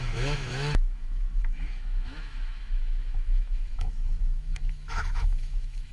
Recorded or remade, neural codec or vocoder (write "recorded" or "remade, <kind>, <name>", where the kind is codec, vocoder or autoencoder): remade, autoencoder, DAC-VAE